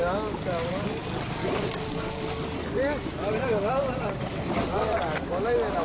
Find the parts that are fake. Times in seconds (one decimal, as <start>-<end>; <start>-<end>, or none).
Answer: none